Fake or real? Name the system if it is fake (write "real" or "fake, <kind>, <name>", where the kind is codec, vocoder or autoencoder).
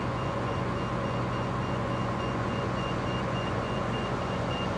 fake, vocoder, Vocos